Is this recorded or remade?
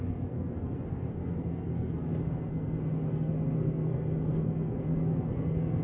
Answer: remade